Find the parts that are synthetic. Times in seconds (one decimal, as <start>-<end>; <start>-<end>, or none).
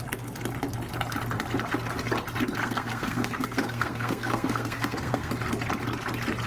2.6-5.3